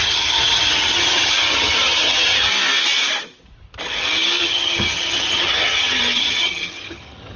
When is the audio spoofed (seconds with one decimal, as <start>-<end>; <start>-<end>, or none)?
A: 0.0-2.5; 4.4-7.4

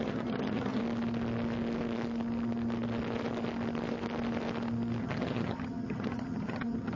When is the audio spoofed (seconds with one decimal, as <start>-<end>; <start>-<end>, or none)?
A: 0.0-0.8; 5.0-7.0

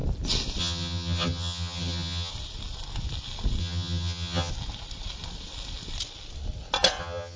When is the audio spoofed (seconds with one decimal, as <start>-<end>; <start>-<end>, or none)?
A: 0.6-2.3; 3.6-4.5; 7.0-7.4

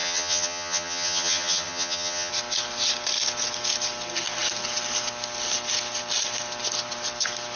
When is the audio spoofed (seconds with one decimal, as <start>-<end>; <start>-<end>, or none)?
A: 0.0-2.3